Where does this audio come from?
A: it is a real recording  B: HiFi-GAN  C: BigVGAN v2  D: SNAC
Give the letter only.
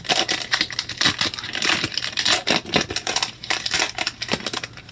A